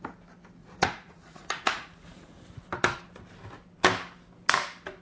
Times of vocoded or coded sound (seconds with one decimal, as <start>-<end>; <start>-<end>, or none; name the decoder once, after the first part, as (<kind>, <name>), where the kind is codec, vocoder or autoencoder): 0.6-2.4 (vocoder, Vocos)